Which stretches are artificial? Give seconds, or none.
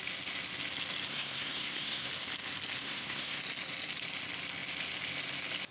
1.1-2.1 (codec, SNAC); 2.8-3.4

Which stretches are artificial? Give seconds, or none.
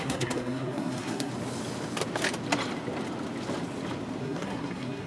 0.0-1.3 (codec, SNAC); 4.2-5.1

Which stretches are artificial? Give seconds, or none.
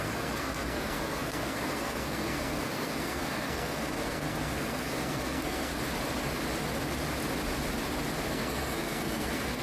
0.0-5.7 (codec, SNAC); 8.3-9.6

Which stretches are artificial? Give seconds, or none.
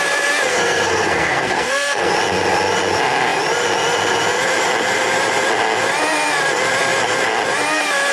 0.5-2.1 (codec, SNAC)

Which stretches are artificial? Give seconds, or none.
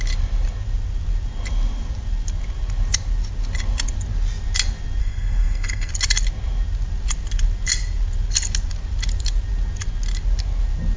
5.0-5.9 (codec, SNAC)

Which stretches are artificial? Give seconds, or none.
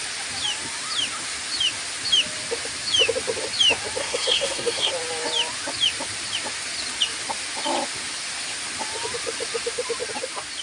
4.0-4.9 (codec, SNAC)